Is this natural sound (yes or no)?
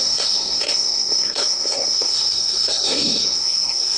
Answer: no